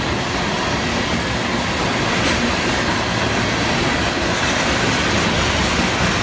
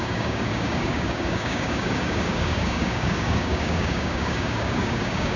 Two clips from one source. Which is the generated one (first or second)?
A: second